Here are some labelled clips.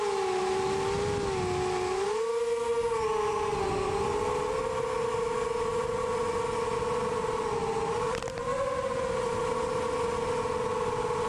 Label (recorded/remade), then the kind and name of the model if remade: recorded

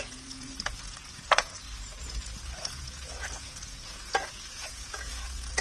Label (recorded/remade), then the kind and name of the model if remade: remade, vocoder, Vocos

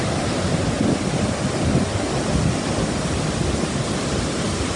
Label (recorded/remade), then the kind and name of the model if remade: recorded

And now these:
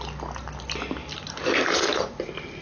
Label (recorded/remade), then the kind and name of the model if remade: recorded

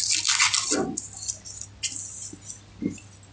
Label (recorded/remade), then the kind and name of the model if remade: recorded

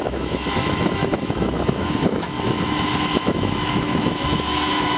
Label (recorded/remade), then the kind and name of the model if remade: remade, autoencoder, DAC-VAE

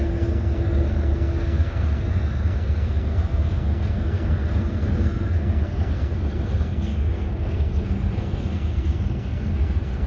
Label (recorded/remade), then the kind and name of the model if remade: remade, codec, SNAC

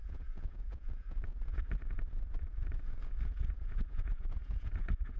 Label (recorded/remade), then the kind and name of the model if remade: remade, vocoder, Vocos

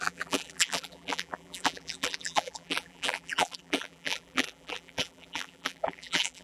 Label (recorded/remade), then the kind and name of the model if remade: remade, vocoder, BigVGAN v2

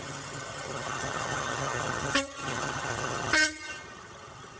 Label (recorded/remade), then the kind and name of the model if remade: remade, vocoder, HiFi-GAN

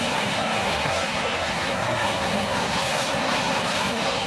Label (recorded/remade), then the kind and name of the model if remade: remade, codec, SNAC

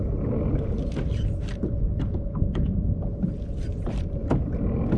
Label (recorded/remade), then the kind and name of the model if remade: recorded